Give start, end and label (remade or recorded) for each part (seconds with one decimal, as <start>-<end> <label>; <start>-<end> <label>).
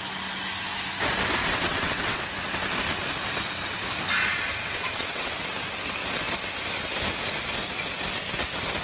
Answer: 0.0-1.4 recorded; 1.4-2.2 remade; 2.2-4.5 recorded; 4.5-5.3 remade; 5.3-8.8 recorded